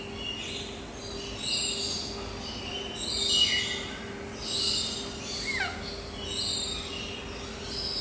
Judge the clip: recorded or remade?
recorded